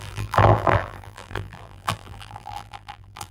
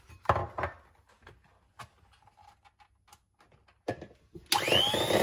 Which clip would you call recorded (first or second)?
second